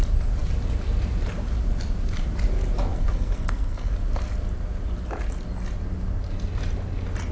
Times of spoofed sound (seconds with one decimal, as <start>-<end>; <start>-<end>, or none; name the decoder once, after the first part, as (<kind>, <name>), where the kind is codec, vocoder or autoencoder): 2.9-3.9 (codec, SNAC)